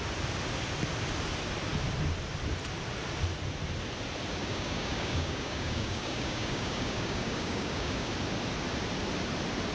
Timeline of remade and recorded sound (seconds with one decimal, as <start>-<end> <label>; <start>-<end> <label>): 0.0-4.4 recorded; 4.4-8.1 remade; 8.1-9.7 recorded